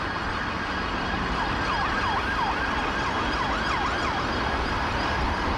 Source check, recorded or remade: recorded